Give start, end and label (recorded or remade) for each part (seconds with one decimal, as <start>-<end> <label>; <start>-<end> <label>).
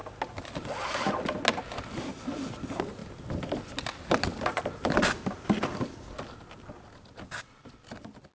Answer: 0.0-3.0 recorded; 3.0-3.6 remade; 3.6-4.3 recorded; 4.3-6.2 remade; 6.2-8.3 recorded